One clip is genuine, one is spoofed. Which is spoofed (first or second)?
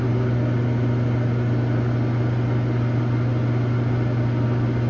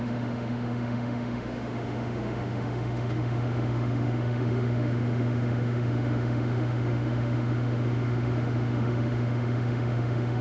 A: second